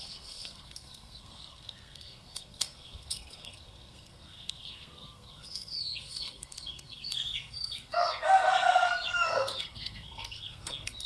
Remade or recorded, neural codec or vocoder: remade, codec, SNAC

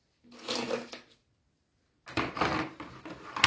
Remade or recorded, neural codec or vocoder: recorded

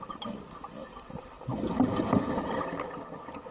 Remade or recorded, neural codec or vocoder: recorded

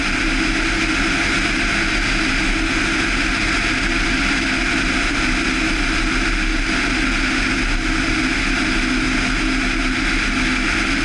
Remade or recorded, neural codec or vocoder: recorded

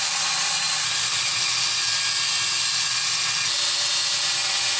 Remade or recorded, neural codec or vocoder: recorded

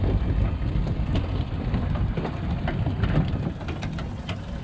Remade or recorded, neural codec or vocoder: recorded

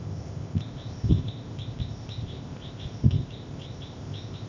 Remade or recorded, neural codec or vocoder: remade, codec, ZipCodec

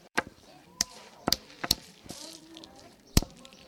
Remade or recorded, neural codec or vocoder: remade, vocoder, BigVGAN v2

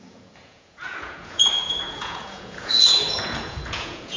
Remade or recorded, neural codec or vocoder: remade, vocoder, Vocos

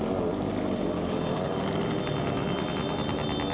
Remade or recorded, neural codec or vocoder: recorded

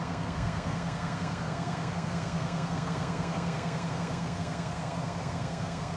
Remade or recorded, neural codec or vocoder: remade, codec, SNAC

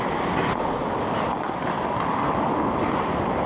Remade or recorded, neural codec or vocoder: recorded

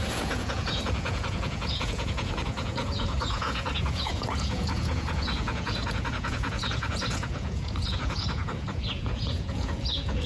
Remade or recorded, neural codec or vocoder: remade, vocoder, Vocos